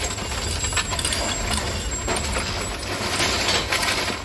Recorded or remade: recorded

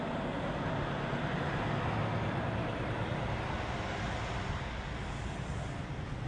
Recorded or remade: recorded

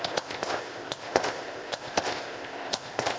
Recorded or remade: remade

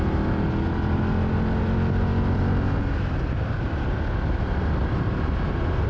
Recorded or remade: recorded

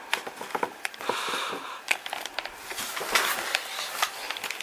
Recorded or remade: recorded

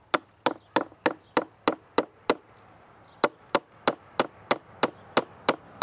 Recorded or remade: recorded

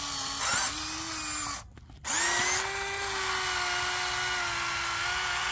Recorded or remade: recorded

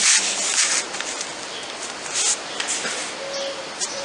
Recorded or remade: recorded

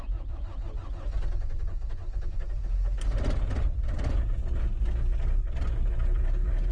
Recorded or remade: recorded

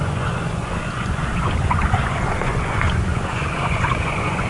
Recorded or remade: remade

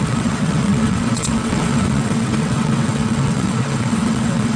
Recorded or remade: remade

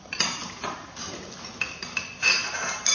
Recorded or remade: recorded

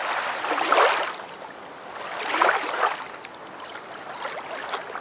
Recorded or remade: recorded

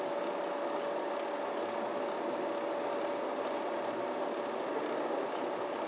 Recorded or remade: recorded